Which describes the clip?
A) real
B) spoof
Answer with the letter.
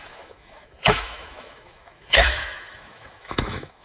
B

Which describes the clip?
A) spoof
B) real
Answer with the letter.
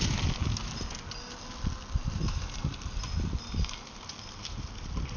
B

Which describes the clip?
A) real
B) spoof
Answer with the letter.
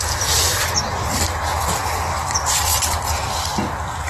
A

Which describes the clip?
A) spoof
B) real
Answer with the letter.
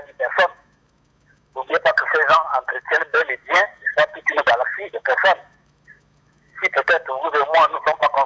A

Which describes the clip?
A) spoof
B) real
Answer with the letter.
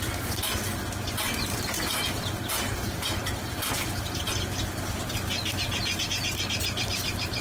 B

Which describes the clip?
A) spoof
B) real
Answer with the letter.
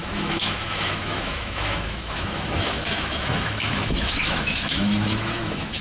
A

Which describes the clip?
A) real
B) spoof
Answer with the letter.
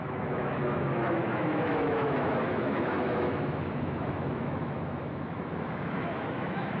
B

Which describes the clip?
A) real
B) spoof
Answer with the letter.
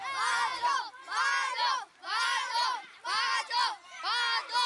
A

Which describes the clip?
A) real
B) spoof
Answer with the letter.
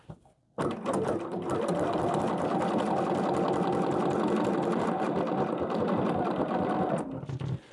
A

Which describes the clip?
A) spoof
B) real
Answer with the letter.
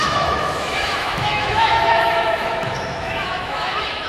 A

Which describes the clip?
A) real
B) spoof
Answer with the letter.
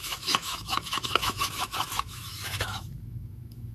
B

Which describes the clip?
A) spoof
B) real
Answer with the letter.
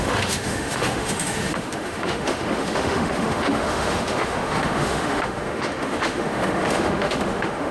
A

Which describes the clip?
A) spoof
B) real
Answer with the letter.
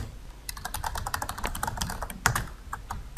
B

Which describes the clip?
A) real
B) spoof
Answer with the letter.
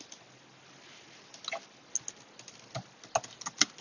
A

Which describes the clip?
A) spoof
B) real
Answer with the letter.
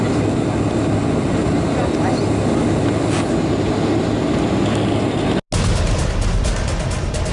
B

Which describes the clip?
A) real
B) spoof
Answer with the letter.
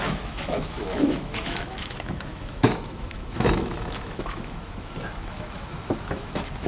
B